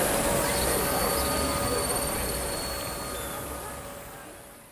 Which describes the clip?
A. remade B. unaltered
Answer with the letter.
B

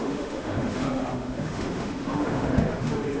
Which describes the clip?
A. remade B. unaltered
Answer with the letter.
A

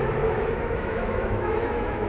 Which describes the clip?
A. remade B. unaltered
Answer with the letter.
A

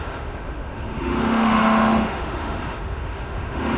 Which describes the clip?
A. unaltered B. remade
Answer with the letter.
B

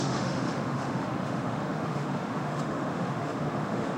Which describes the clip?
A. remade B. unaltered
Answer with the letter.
A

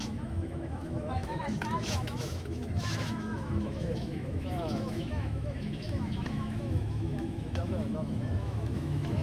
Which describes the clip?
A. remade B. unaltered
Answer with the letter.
A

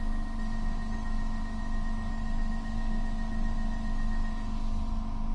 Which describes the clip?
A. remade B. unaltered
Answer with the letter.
B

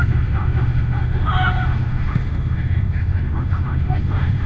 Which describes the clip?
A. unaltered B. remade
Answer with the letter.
B